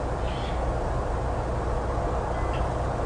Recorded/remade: recorded